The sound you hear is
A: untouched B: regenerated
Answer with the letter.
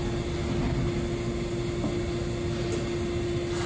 A